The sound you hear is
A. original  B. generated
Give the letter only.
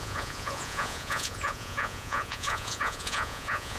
B